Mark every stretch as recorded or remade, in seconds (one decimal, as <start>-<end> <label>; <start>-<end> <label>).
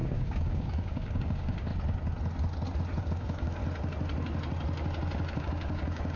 0.0-1.7 remade; 1.7-3.0 recorded; 3.0-3.6 remade; 3.6-5.4 recorded; 5.4-6.2 remade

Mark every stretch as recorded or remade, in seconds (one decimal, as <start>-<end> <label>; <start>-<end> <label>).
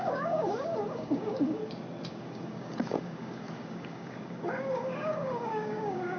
0.0-1.6 remade; 1.6-2.1 recorded; 2.1-6.2 remade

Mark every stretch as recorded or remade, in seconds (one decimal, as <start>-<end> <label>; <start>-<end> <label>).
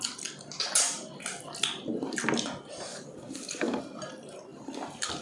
0.0-2.9 recorded; 2.9-3.8 remade; 3.8-5.2 recorded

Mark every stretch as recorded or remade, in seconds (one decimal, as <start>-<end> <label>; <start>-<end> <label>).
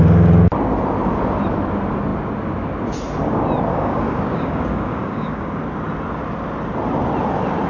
0.0-3.7 recorded; 3.7-5.5 remade; 5.5-7.7 recorded